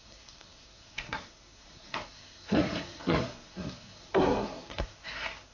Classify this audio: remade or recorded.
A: remade